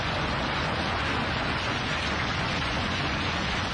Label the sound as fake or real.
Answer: fake